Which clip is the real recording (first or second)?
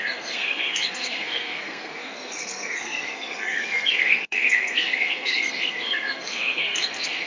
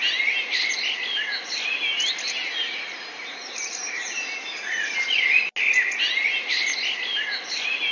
second